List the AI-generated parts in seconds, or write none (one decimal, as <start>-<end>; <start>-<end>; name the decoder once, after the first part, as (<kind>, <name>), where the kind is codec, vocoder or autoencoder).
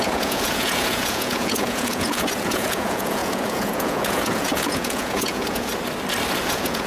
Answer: 0.0-5.7 (vocoder, Vocos); 6.4-6.9